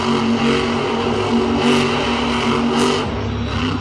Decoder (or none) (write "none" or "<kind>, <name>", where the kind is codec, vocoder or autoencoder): none